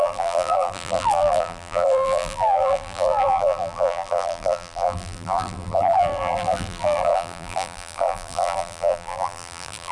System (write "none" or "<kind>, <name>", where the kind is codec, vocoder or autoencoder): vocoder, BigVGAN v2